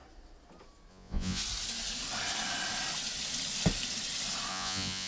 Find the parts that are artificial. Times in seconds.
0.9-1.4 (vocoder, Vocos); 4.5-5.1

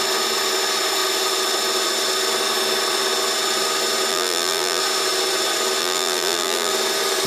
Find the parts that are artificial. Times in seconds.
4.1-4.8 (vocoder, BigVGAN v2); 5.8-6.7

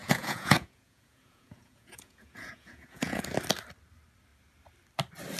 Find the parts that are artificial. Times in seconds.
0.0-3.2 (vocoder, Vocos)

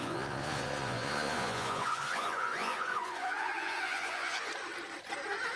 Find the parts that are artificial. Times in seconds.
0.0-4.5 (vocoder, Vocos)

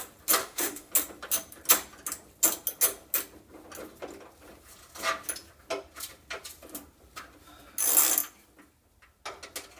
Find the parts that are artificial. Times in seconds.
0.4-0.9 (autoencoder, DAC-VAE)

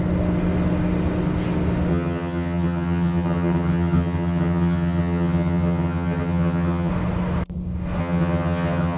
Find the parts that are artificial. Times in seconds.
1.9-6.9 (vocoder, HiFi-GAN); 8.0-9.0